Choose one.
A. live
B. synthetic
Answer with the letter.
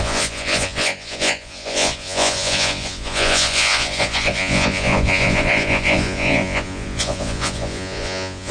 B